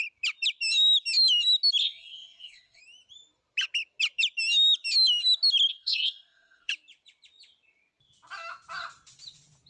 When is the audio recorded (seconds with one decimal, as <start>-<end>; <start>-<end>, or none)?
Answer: 0.0-1.8; 2.8-5.7; 6.7-9.7